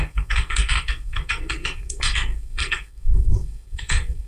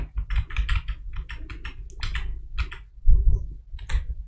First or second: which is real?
second